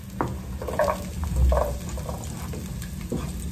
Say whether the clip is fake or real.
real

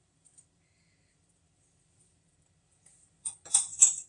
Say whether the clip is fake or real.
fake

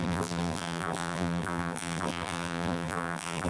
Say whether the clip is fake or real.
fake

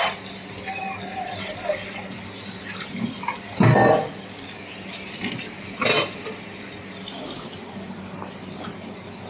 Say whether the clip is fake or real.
real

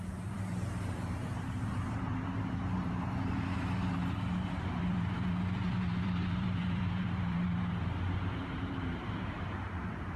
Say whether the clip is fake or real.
fake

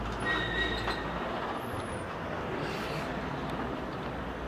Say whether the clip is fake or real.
real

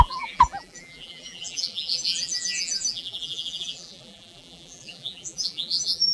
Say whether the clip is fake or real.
fake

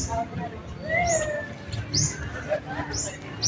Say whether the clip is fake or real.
real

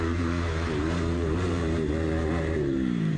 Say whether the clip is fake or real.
fake